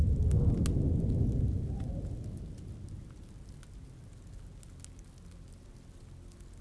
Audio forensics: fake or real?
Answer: real